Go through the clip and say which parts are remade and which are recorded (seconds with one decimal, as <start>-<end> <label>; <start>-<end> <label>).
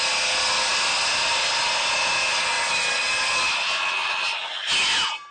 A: 0.0-5.3 recorded